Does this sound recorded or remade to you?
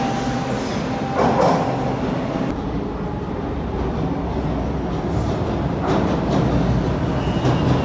recorded